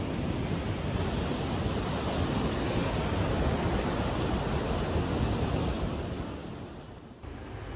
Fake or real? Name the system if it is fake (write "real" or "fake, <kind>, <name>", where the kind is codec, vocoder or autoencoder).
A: real